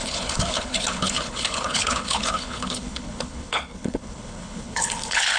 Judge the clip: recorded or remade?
remade